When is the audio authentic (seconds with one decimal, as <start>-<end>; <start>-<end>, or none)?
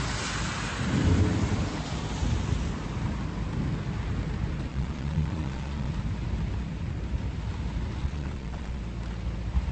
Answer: 0.0-4.7; 5.9-8.0; 8.8-9.7